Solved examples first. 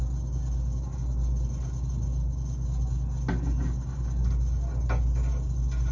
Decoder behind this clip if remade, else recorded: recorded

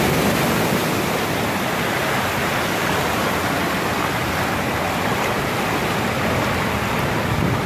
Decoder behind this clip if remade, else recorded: recorded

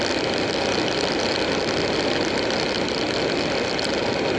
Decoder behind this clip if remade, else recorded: remade, vocoder, BigVGAN v2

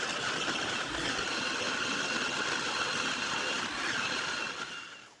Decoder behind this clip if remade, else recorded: recorded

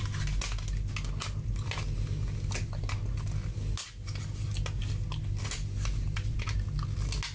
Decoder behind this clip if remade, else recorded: recorded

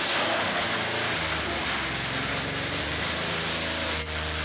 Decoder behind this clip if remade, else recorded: recorded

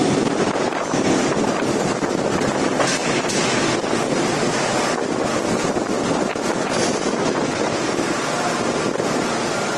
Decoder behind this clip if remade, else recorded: recorded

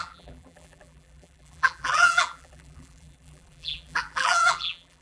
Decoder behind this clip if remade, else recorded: remade, vocoder, BigVGAN v2